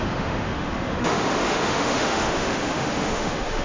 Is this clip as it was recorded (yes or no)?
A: no